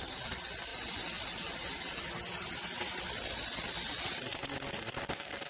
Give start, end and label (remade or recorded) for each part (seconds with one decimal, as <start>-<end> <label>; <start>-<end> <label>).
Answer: 0.0-5.5 recorded